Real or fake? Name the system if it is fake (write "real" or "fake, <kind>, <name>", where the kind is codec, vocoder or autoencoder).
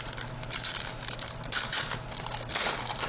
real